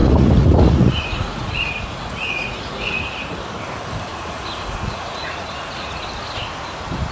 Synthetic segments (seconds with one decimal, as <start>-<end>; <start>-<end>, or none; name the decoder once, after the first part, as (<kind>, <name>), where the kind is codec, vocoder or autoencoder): 0.0-3.4 (vocoder, Vocos); 4.1-6.0

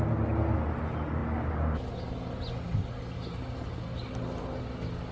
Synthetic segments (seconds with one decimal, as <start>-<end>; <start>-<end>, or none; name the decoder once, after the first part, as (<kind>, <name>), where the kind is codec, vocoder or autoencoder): none

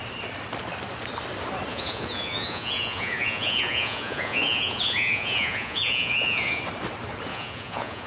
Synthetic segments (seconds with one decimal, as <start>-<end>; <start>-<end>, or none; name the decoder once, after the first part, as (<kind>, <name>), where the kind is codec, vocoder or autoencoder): 1.7-6.6 (vocoder, Vocos); 7.3-8.1

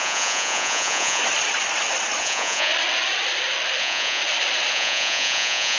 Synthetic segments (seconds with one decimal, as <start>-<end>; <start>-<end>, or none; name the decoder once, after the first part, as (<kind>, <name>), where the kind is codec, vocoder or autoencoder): 0.0-1.2 (vocoder, Vocos); 2.2-2.7; 3.8-4.2; 4.7-5.8

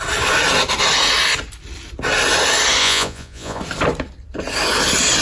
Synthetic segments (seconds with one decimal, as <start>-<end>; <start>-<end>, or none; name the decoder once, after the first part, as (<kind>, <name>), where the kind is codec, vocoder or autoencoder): 2.8-3.6 (vocoder, Vocos)

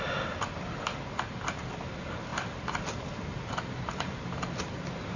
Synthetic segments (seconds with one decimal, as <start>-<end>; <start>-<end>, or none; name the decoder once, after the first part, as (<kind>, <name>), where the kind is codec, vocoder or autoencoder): none